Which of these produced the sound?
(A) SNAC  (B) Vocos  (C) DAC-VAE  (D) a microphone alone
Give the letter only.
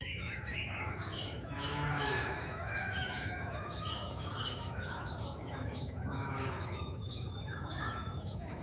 C